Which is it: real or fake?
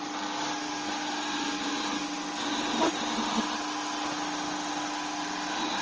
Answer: real